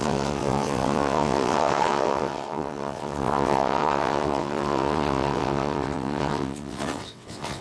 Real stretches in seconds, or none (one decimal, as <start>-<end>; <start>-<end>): none